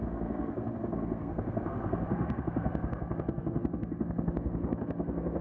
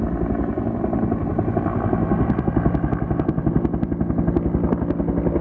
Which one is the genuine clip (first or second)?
second